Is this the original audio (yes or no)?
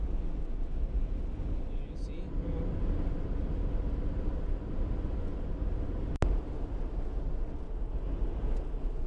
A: yes